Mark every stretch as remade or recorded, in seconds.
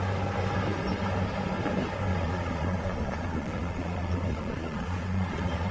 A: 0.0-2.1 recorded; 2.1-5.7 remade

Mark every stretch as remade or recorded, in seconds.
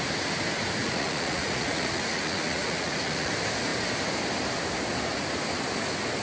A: 0.0-0.8 recorded; 0.8-3.3 remade; 3.3-6.2 recorded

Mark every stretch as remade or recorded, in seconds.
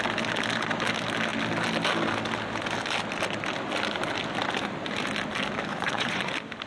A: 0.0-5.7 recorded; 5.7-6.3 remade; 6.3-6.7 recorded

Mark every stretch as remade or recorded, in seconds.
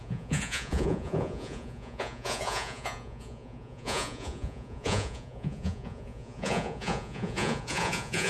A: 0.0-8.3 remade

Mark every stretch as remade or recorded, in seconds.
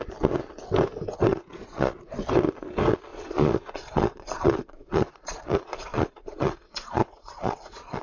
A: 0.0-1.3 recorded; 1.3-2.1 remade; 2.1-3.1 recorded; 3.1-8.0 remade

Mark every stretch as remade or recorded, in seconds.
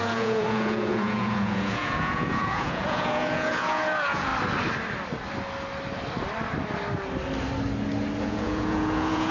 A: 0.0-4.3 remade; 4.3-8.2 recorded; 8.2-9.3 remade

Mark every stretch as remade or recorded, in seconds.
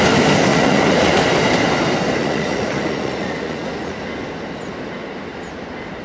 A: 0.0-0.5 recorded; 0.5-1.1 remade; 1.1-2.2 recorded; 2.2-4.0 remade; 4.0-6.0 recorded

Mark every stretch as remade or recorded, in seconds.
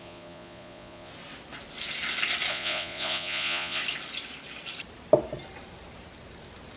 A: 0.0-1.1 remade; 1.1-2.5 recorded; 2.5-3.8 remade; 3.8-6.8 recorded